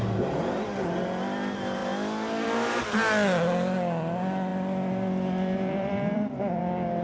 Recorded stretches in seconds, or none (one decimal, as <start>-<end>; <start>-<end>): 0.0-4.5; 6.6-7.0